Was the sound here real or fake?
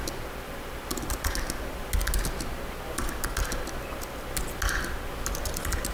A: real